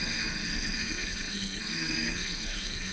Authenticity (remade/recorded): remade